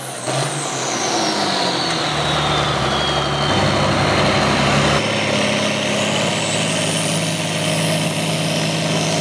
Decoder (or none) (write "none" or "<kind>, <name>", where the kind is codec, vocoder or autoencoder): none